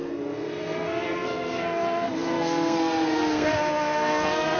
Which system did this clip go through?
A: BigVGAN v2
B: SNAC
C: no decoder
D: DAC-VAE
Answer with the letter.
B